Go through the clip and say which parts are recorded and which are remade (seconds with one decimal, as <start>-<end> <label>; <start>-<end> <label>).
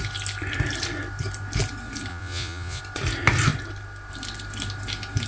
0.0-2.1 recorded; 2.1-2.8 remade; 2.8-5.3 recorded